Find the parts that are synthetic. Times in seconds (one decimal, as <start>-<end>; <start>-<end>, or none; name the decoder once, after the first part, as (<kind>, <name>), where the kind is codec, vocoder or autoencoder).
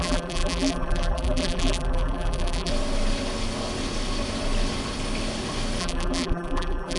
0.0-2.7 (vocoder, BigVGAN v2); 5.8-7.0